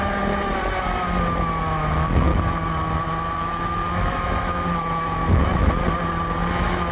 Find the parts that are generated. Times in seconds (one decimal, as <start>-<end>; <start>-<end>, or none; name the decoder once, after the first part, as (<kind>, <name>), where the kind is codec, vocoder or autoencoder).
0.0-0.6 (autoencoder, DAC-VAE); 1.8-2.3; 3.4-5.8; 6.5-6.9